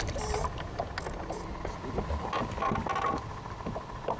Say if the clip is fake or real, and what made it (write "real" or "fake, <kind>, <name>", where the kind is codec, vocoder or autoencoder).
real